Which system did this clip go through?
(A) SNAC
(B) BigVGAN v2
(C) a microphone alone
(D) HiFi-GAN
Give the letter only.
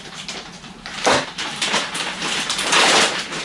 B